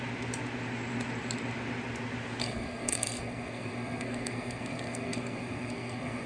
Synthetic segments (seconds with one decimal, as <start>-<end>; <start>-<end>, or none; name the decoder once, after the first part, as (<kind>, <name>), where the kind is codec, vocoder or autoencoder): 2.4-6.3 (codec, SNAC)